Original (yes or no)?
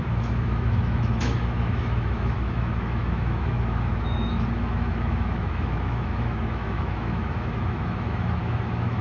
no